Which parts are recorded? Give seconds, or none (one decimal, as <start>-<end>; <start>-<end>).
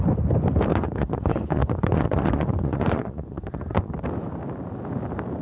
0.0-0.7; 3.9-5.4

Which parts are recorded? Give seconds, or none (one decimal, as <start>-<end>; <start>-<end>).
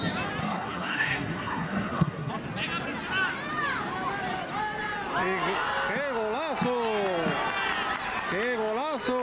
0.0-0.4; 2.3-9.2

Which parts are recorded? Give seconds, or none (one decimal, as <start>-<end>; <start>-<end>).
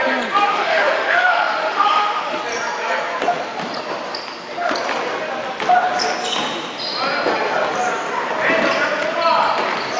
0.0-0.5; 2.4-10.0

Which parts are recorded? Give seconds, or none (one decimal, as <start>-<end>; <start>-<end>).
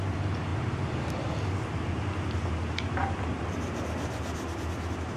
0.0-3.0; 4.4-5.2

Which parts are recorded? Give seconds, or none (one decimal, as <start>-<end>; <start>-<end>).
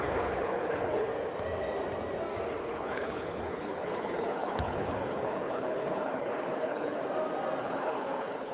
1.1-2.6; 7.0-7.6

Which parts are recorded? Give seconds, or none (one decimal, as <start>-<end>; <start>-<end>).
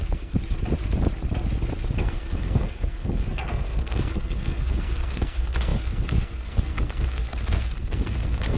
0.4-2.0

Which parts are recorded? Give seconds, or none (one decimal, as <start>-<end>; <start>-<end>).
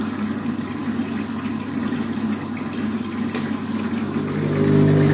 0.0-5.1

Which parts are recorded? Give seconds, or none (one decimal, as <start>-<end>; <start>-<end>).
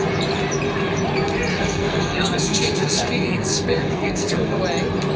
0.0-1.5; 4.6-5.2